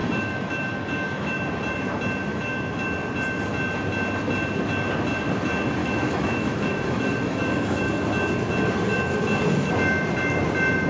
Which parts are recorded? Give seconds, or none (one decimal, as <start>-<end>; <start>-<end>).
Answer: 1.5-2.3; 2.8-5.8; 7.8-10.9